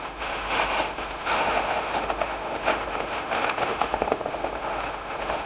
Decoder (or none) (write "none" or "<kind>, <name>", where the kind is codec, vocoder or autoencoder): autoencoder, DAC-VAE